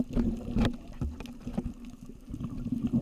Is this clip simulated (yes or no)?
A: no